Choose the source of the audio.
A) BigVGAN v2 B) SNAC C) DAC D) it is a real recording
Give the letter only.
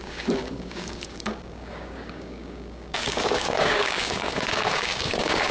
C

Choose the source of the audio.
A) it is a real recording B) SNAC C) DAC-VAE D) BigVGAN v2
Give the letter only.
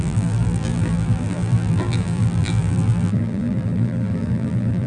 D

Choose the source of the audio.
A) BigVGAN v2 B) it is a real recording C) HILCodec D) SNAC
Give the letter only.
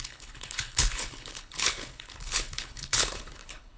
C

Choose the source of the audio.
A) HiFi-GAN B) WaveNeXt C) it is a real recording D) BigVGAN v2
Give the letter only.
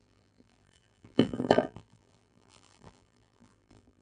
D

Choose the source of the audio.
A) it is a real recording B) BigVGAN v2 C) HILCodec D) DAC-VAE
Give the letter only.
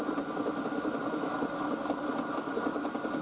A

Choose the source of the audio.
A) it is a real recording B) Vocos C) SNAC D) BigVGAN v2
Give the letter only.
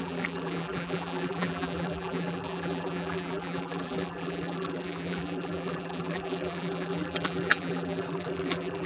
D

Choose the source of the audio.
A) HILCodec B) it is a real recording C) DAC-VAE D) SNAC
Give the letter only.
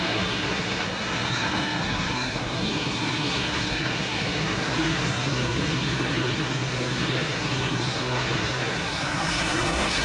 D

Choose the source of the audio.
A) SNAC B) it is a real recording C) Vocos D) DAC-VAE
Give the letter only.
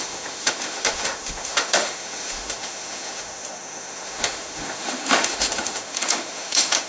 D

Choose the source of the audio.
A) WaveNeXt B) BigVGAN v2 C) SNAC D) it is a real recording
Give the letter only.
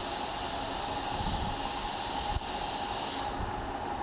D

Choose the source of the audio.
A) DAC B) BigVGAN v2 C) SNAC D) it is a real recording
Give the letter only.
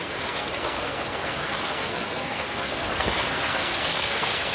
C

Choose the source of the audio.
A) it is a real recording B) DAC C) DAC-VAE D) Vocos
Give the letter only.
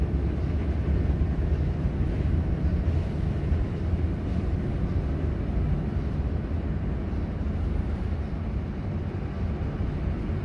A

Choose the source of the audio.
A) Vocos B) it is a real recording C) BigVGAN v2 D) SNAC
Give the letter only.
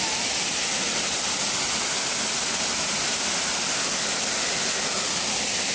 B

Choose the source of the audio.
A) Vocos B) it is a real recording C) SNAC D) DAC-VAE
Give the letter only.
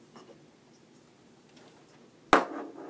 B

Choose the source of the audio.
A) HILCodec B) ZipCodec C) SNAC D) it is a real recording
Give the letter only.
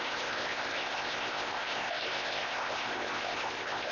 B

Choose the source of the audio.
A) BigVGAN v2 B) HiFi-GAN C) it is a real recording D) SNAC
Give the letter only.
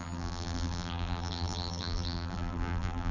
A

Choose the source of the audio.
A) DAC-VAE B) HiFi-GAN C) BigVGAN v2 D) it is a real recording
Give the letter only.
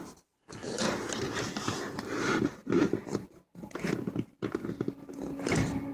C